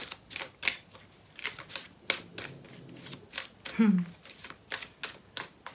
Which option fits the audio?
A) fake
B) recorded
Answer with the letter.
B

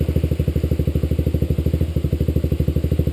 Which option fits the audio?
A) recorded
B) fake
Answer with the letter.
A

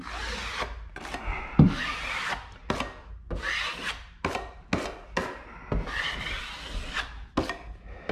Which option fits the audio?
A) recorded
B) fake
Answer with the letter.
A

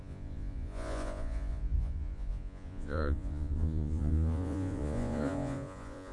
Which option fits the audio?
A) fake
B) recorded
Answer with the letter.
A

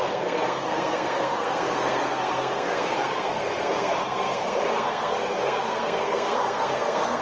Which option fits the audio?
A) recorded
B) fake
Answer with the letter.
B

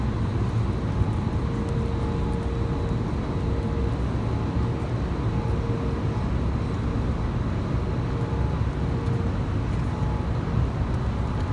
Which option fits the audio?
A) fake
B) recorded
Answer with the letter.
B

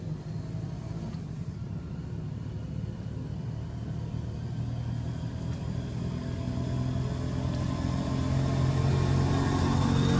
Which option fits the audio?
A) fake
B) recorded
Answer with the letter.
B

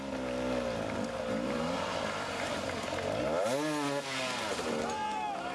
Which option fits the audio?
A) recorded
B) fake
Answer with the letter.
A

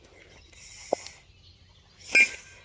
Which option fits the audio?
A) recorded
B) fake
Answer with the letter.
A